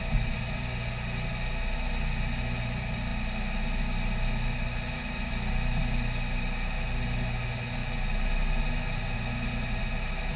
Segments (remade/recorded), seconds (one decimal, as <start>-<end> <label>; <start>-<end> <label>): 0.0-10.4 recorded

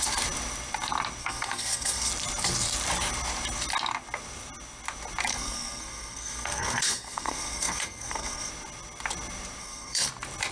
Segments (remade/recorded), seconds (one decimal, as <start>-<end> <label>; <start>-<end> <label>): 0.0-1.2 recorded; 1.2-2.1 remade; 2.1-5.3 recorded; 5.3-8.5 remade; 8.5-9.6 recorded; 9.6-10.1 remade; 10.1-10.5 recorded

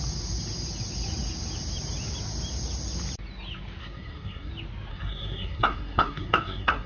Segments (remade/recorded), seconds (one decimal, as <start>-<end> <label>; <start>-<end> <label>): 0.0-3.8 recorded; 3.8-4.5 remade; 4.5-4.9 recorded; 4.9-6.9 remade

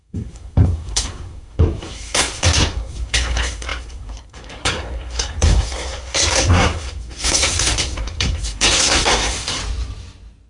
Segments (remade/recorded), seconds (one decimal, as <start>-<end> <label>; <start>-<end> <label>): 0.0-9.6 remade; 9.6-10.5 recorded

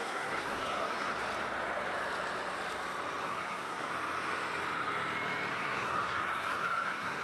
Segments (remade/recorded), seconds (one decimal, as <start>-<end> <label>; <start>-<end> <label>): 0.0-1.1 remade; 1.1-3.2 recorded; 3.2-3.9 remade; 3.9-5.5 recorded; 5.5-7.2 remade

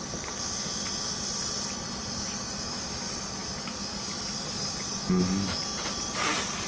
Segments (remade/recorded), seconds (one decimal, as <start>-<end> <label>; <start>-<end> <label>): 0.0-6.7 recorded